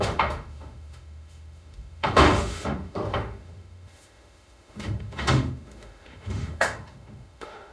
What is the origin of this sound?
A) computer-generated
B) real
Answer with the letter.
A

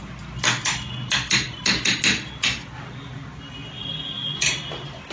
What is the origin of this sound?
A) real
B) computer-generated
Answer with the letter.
A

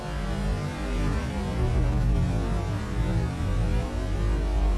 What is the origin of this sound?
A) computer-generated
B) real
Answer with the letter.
B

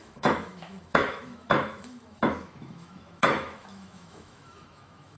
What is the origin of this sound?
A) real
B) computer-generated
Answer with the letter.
B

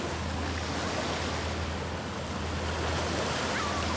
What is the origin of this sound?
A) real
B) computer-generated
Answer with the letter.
A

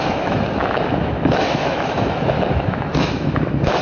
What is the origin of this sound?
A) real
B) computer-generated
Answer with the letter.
B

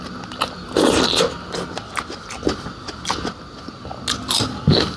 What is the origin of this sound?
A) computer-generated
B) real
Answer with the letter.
B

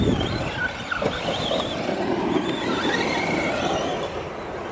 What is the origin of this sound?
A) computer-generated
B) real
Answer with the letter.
B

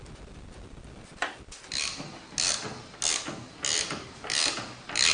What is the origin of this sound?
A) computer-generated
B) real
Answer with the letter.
B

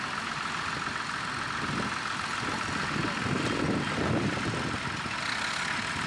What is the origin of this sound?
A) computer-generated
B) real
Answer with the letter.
B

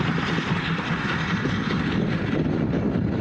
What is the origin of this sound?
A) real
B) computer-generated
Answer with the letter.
A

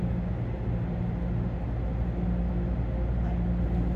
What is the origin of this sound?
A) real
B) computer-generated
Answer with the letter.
A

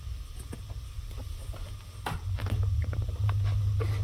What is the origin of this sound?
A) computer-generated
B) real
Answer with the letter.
B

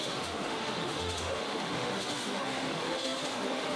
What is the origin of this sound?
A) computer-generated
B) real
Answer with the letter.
A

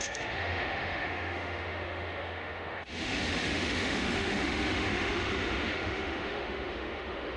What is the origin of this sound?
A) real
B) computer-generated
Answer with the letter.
B